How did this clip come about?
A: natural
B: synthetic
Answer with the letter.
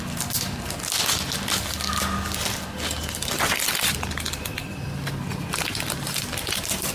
A